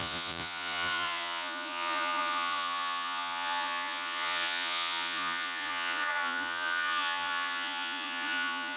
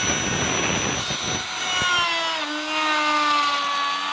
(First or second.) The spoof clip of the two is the first